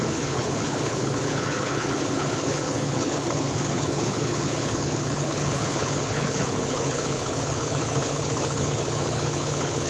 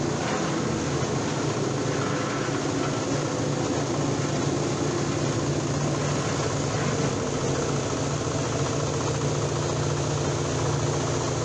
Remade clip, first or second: first